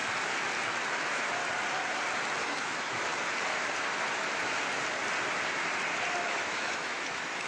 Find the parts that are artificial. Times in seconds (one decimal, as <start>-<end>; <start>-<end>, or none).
0.9-1.4; 2.4-3.1; 6.2-7.5